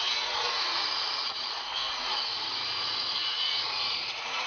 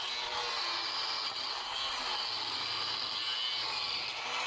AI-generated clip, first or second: first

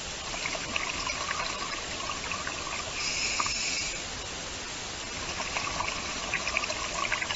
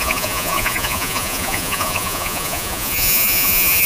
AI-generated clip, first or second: second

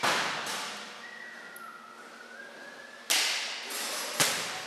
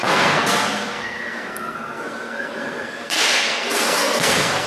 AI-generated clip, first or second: second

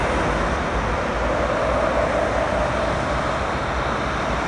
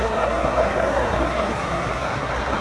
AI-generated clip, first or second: second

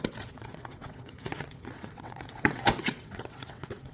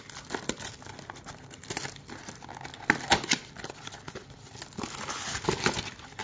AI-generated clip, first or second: first